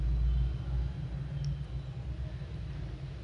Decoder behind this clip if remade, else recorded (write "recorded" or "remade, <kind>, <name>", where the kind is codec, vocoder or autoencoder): recorded